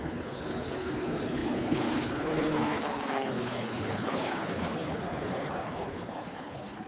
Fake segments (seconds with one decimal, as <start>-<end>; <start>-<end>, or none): 0.0-6.9